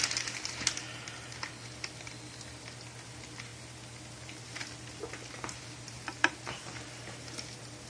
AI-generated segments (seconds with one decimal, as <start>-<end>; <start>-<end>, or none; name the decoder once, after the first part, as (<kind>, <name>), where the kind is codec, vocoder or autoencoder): none